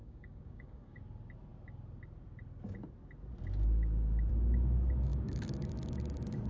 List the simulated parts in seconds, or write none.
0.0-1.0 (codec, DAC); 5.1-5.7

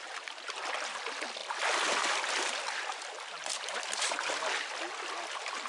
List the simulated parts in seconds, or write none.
none

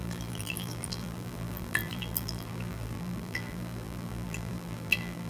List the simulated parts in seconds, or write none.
0.0-5.3 (vocoder, BigVGAN v2)

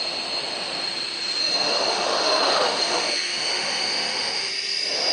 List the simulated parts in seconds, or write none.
1.4-4.5 (autoencoder, DAC-VAE)